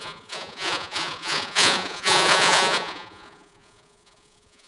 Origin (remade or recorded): remade